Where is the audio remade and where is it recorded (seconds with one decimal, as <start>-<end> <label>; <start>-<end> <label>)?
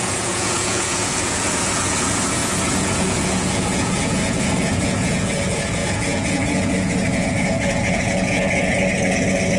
0.0-9.6 remade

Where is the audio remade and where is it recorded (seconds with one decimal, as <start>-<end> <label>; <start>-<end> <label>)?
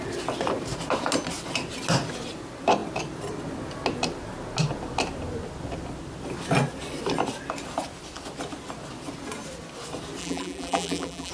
0.0-10.2 recorded; 10.2-11.3 remade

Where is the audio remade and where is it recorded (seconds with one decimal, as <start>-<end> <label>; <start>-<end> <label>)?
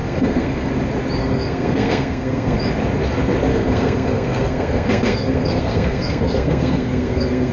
0.0-0.7 remade; 0.7-1.2 recorded; 1.2-2.6 remade; 2.6-3.5 recorded; 3.5-7.5 remade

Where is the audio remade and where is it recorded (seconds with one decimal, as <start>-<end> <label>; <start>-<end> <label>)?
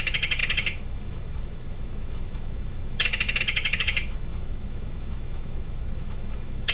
0.0-6.7 remade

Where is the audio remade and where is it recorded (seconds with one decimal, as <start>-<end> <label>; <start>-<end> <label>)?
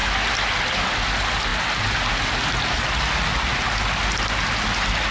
0.0-5.1 recorded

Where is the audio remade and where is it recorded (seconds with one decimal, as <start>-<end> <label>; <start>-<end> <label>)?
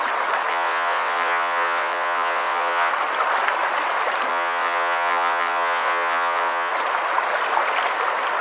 0.0-0.5 recorded; 0.5-2.9 remade; 2.9-4.3 recorded; 4.3-6.7 remade; 6.7-8.4 recorded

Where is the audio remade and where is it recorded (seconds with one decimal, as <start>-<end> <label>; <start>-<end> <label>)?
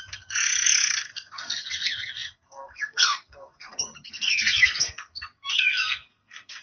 0.0-6.6 remade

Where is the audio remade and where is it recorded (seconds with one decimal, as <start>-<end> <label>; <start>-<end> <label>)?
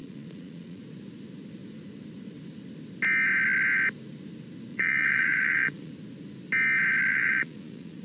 0.0-0.8 remade; 0.8-4.7 recorded; 4.7-5.9 remade; 5.9-7.1 recorded; 7.1-8.0 remade